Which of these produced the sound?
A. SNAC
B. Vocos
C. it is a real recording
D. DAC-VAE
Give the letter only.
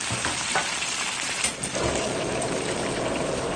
C